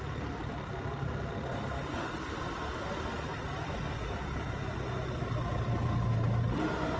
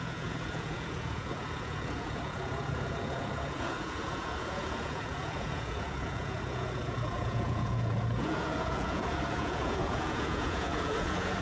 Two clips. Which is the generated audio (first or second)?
second